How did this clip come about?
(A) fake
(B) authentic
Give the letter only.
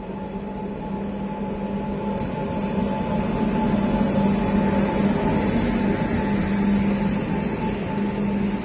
B